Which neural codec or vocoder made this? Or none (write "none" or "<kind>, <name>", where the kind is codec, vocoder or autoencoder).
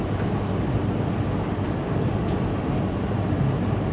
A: none